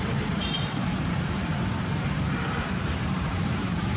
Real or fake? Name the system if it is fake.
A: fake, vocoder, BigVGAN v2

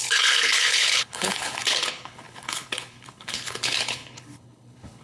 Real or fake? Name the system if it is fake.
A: fake, codec, HILCodec